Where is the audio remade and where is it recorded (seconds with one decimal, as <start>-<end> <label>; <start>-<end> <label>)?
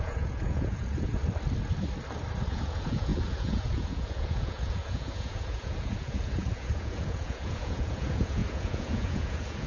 0.0-1.2 remade; 1.2-2.5 recorded; 2.5-9.7 remade